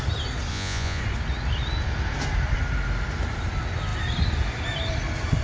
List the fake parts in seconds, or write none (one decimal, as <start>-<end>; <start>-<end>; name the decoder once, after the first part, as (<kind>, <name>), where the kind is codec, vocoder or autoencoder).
0.5-1.0 (vocoder, Vocos)